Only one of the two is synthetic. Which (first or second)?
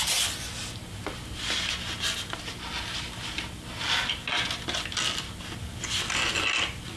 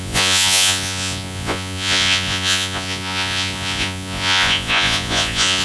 second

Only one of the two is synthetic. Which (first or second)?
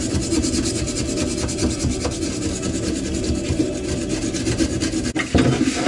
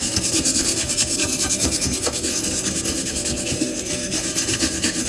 second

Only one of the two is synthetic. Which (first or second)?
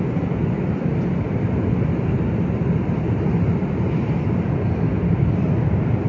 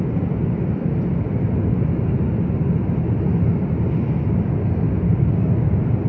first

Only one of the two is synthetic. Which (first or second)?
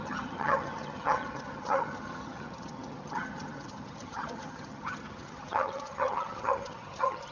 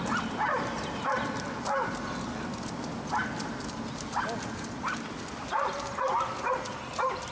first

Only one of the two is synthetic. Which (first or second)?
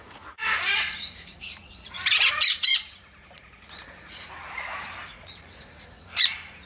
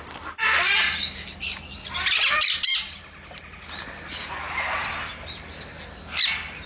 first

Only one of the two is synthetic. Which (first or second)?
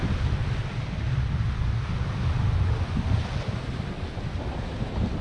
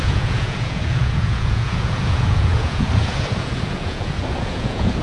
second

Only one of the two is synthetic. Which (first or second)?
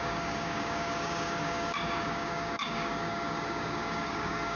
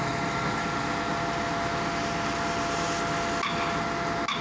first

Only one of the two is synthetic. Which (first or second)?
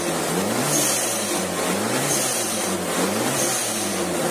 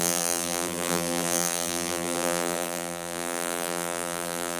second